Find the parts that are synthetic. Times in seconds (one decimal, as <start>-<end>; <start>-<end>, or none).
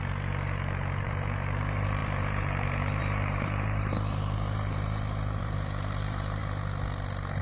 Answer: 0.0-6.4